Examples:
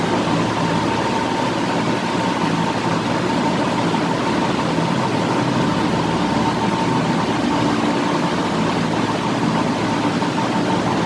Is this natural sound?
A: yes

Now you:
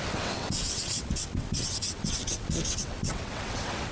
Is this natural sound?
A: no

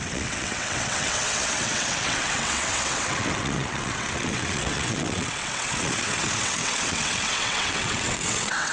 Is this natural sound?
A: no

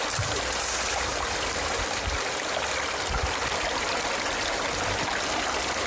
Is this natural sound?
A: yes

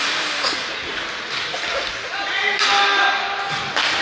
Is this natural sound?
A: yes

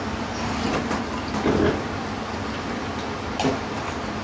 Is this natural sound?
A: yes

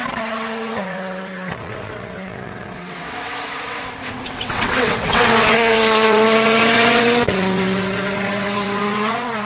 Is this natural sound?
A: no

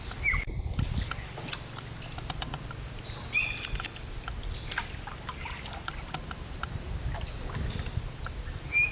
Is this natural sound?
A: yes